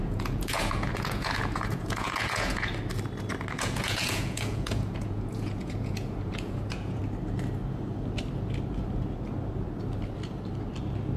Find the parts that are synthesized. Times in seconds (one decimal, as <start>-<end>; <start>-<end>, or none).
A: 0.0-2.7; 3.5-7.0